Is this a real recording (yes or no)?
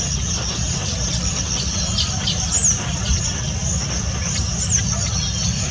yes